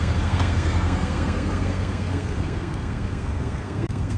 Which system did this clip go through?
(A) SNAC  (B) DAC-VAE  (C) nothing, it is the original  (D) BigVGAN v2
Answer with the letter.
A